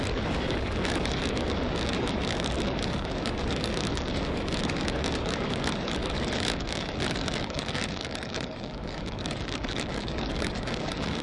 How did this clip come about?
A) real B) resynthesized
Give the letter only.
B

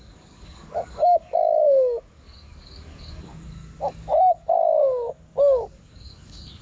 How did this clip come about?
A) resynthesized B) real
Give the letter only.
A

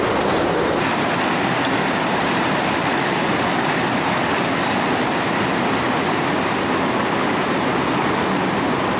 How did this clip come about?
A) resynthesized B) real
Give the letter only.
B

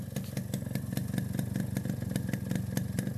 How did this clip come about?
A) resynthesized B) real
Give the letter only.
B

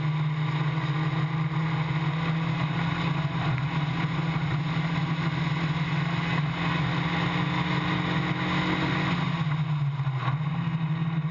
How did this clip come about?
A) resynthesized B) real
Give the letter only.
B